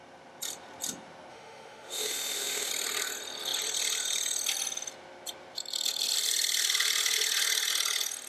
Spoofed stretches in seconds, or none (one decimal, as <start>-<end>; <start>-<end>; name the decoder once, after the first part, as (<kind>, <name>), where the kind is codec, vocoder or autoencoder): 1.3-2.7 (autoencoder, DAC-VAE)